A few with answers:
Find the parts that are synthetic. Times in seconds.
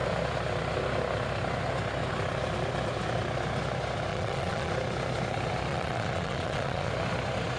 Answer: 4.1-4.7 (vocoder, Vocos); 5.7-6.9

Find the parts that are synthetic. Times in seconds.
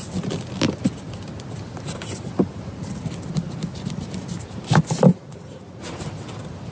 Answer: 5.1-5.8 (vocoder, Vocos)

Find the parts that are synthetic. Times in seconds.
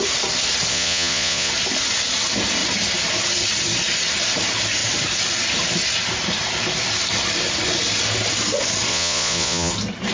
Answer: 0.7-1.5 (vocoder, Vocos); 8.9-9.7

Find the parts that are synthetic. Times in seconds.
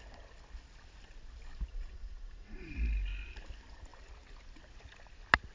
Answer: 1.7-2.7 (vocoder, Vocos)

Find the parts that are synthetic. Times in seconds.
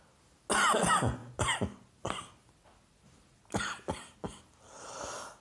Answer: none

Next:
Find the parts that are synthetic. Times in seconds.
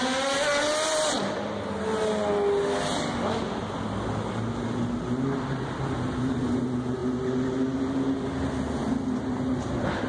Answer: none